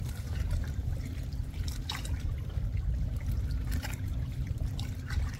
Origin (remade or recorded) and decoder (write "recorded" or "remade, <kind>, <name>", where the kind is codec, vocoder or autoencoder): remade, vocoder, BigVGAN v2